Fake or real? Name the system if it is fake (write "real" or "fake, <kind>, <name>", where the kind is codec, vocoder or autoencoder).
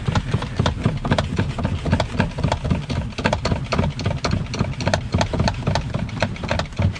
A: real